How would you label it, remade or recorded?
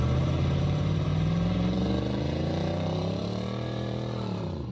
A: remade